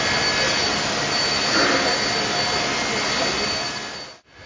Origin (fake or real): real